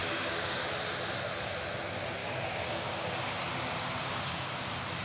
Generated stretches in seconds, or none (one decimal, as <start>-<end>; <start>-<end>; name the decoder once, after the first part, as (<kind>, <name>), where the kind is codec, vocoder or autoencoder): 0.0-0.6 (codec, DAC); 2.2-3.1; 4.0-4.6